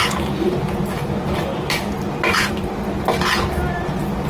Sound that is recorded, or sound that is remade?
recorded